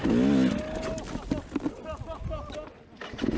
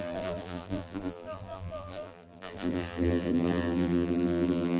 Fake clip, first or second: second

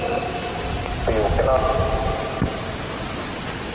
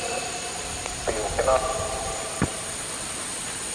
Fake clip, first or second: second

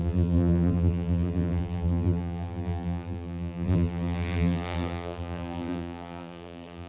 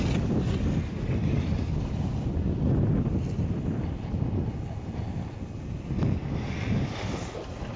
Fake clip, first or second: first